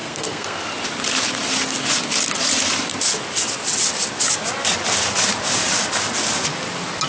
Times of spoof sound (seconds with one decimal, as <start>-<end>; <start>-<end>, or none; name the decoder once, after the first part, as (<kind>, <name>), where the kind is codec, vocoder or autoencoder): 0.0-0.6 (codec, SNAC)